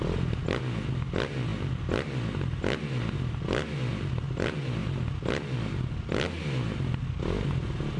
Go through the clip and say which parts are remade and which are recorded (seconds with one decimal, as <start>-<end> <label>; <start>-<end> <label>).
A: 0.0-8.0 recorded